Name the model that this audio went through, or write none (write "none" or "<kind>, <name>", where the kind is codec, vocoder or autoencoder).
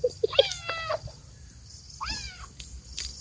none